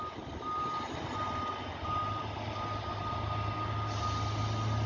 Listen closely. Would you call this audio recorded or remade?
recorded